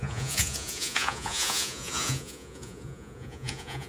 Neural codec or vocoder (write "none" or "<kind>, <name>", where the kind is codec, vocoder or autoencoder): vocoder, Vocos